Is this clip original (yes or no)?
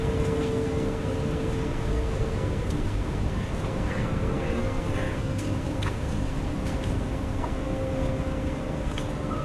no